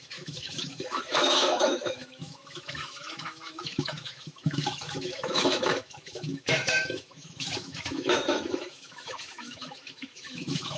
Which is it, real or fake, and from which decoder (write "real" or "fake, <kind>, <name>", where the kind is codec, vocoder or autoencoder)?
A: fake, autoencoder, DAC-VAE